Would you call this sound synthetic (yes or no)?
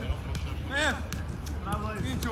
no